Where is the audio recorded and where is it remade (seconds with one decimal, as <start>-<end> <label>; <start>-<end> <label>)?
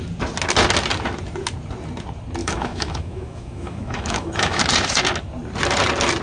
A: 0.0-2.4 recorded; 2.4-4.6 remade; 4.6-6.2 recorded